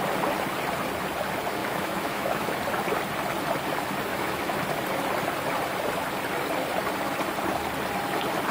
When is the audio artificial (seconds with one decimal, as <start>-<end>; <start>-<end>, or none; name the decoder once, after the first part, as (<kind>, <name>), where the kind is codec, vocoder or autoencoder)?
1.6-2.5 (autoencoder, DAC-VAE); 4.1-4.6